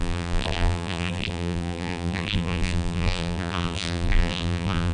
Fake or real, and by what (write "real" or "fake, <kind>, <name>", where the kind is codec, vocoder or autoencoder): fake, vocoder, BigVGAN v2